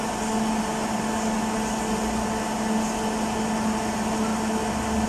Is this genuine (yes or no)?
yes